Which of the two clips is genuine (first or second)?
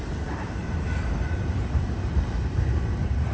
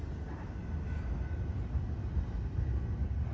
second